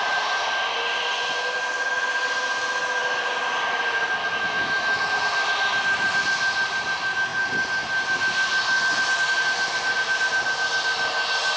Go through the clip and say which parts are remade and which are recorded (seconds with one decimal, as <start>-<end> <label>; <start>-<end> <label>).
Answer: 0.0-4.2 recorded; 4.2-5.0 remade; 5.0-11.6 recorded